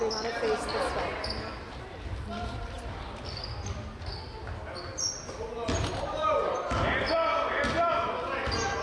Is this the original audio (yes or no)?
yes